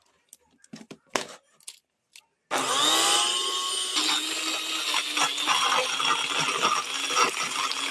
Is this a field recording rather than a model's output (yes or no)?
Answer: yes